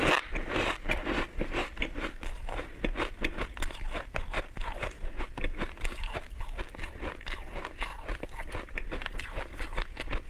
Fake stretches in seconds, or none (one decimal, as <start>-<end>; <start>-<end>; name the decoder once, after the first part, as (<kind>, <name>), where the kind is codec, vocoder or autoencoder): 1.6-2.2 (vocoder, BigVGAN v2); 4.6-6.4; 7.9-9.1